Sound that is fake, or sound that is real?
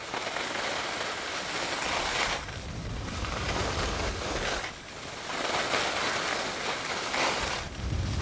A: real